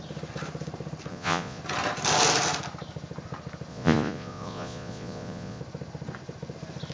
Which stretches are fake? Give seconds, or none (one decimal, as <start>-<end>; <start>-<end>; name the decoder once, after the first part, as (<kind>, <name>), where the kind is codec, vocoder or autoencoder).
1.1-1.6 (vocoder, Vocos); 3.7-5.6